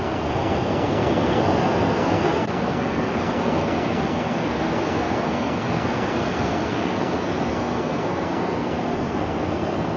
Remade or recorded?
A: remade